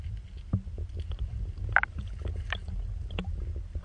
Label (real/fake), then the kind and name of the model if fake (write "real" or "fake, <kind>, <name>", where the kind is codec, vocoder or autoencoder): real